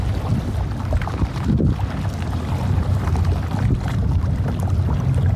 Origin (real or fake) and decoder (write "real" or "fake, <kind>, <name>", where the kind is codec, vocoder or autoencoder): real